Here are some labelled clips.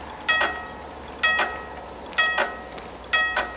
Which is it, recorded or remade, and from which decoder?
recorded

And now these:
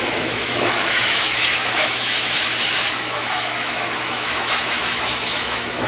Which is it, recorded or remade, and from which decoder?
remade, autoencoder, DAC-VAE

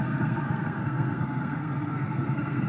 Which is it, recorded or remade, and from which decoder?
remade, codec, SNAC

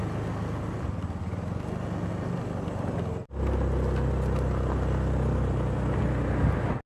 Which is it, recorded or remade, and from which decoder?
recorded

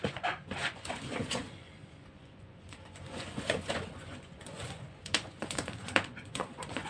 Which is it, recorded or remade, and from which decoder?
remade, vocoder, Vocos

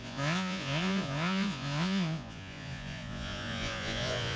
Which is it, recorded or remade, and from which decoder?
remade, vocoder, Vocos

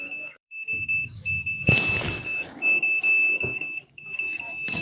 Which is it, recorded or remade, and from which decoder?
remade, codec, DAC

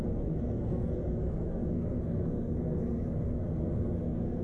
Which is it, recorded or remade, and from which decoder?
remade, codec, SNAC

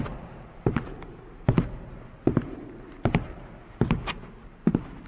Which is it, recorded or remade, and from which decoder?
recorded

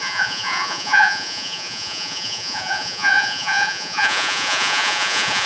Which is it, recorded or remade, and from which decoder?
remade, vocoder, Vocos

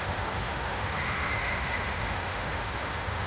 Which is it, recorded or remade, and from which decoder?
remade, autoencoder, DAC-VAE